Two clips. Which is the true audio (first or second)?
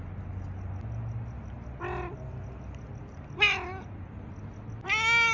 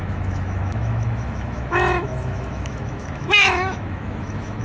first